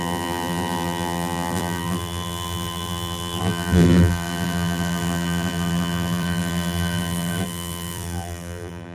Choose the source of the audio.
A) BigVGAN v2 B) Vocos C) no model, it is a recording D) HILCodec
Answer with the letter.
A